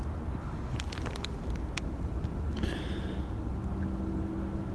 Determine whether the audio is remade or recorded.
recorded